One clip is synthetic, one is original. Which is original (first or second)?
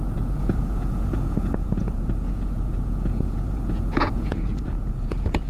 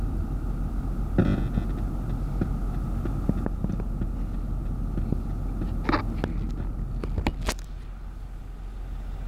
second